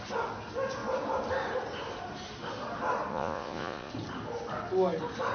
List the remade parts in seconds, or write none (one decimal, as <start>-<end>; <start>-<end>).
3.1-3.9